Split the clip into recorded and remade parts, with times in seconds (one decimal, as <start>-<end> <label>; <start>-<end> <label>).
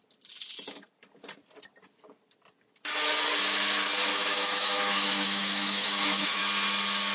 0.0-4.1 recorded; 4.1-6.4 remade; 6.4-7.1 recorded